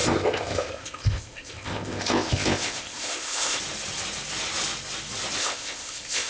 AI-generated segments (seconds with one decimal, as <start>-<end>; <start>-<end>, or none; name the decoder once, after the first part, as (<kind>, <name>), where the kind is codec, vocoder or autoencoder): 0.0-3.6 (codec, ZipCodec); 5.4-6.3